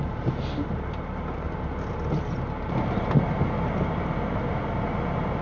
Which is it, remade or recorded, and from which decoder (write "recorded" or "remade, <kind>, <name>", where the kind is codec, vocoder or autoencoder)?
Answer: recorded